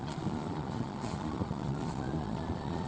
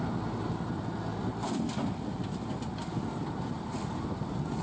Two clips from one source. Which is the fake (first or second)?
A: first